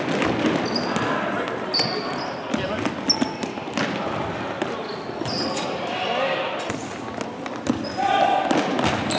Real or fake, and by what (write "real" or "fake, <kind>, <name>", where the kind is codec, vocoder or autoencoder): real